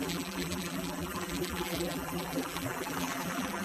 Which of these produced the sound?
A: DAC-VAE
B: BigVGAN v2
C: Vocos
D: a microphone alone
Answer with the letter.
B